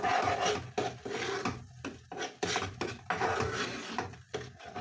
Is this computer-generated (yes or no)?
no